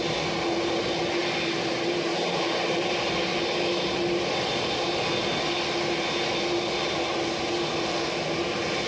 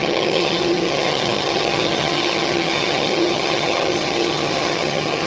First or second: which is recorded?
first